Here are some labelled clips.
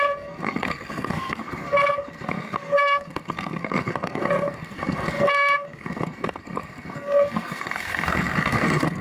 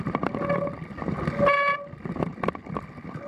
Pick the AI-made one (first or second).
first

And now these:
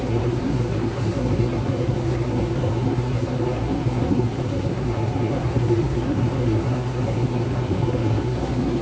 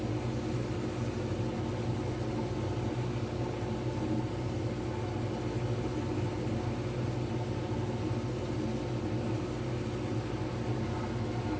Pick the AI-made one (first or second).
first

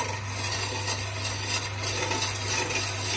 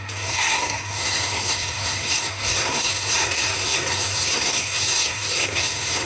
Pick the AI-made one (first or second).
second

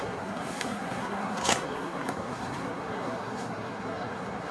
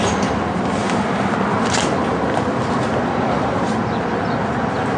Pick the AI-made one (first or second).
first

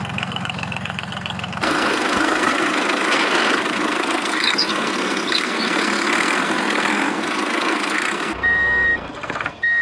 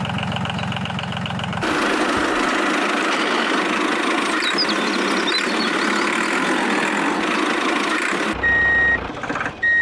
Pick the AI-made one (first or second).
first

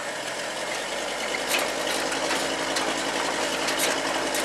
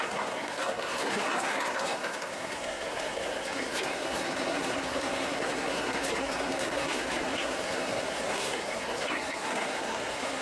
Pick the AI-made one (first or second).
second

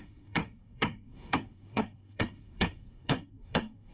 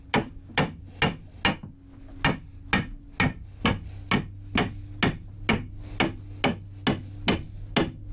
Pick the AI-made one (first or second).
first